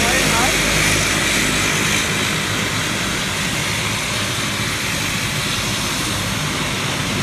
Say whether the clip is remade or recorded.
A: recorded